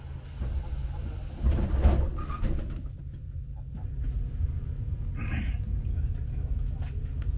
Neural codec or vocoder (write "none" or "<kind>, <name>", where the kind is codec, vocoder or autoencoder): vocoder, BigVGAN v2